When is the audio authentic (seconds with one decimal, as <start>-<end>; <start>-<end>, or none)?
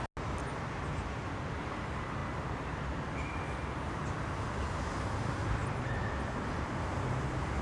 0.0-5.6; 6.1-7.6